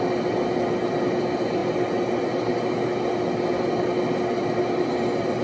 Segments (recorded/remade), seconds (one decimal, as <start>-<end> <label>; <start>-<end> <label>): 0.0-5.4 recorded